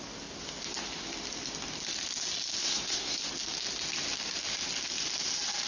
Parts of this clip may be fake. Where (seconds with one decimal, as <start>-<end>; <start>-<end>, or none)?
2.6-3.2